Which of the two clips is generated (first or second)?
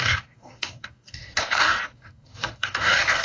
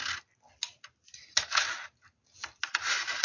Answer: first